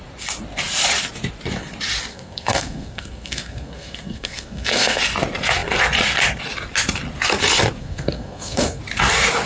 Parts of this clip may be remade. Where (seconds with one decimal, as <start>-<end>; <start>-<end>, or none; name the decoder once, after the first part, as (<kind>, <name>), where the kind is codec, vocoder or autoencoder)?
2.1-5.0 (codec, SNAC); 7.8-8.8